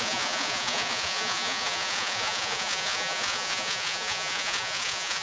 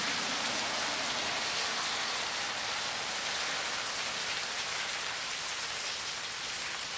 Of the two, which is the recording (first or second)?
second